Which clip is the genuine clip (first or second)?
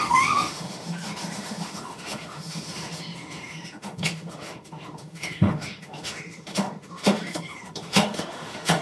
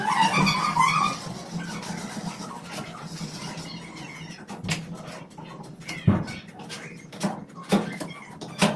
second